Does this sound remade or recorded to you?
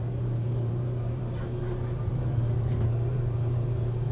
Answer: remade